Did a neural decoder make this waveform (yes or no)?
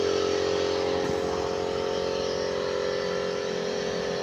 no